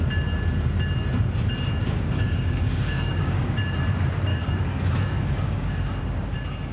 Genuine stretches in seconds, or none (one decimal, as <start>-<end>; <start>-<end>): 0.0-1.8; 3.6-4.3; 6.0-6.7

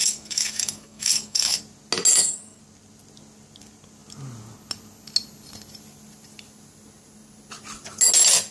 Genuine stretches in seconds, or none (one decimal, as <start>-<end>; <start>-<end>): 1.6-2.1; 2.6-8.5

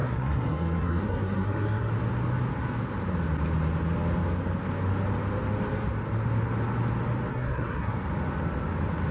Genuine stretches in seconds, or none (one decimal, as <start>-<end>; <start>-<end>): 1.9-7.3; 8.0-9.1

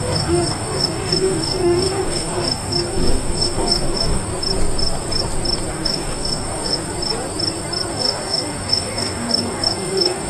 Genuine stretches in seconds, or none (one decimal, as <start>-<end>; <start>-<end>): 4.3-5.7; 6.8-7.9

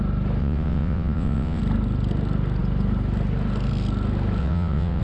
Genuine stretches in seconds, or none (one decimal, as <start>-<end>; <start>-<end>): 0.0-0.4; 1.6-4.4

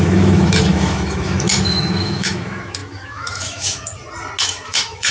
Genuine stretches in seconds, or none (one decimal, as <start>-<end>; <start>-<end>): 3.9-4.4

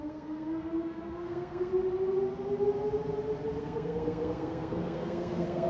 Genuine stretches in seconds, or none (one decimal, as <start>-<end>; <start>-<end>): 1.7-3.6